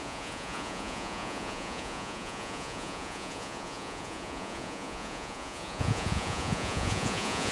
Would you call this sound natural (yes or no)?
no